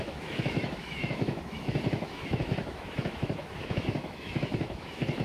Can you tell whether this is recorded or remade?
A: remade